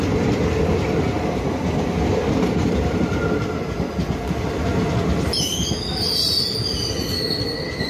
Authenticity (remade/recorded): recorded